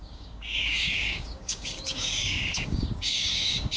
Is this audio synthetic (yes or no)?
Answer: yes